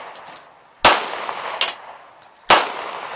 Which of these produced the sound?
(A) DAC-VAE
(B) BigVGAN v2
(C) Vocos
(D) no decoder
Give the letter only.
D